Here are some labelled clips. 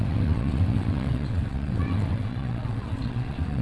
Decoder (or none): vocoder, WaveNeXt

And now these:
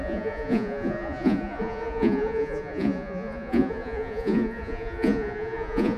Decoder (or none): vocoder, Vocos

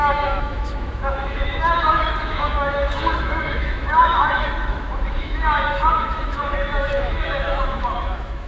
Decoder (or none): autoencoder, DAC-VAE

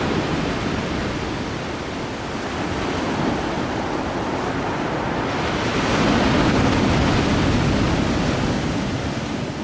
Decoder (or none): none